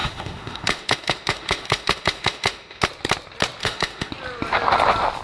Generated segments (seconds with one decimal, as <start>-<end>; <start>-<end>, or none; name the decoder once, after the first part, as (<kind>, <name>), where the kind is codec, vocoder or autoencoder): 0.0-2.8 (autoencoder, DAC-VAE); 3.6-4.1